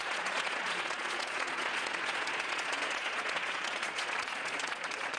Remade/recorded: remade